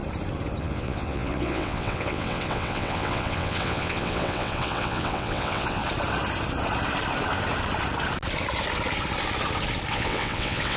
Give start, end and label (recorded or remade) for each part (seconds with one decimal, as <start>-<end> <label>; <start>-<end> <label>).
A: 0.0-0.6 recorded; 0.6-5.8 remade; 5.8-9.9 recorded; 9.9-10.8 remade